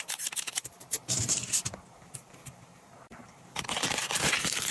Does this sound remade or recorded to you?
remade